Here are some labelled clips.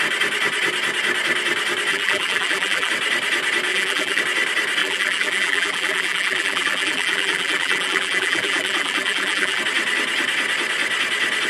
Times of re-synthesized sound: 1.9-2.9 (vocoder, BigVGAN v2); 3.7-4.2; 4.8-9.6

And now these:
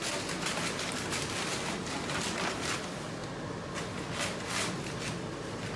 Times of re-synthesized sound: 0.0-3.2 (vocoder, BigVGAN v2); 4.4-5.8

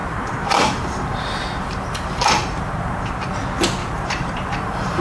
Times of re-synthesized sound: 0.0-3.0 (vocoder, BigVGAN v2); 3.8-5.0

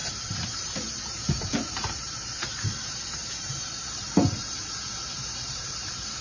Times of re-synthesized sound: 0.0-6.2 (vocoder, BigVGAN v2)